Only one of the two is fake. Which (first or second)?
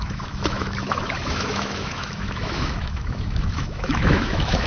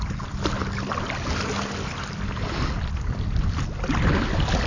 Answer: first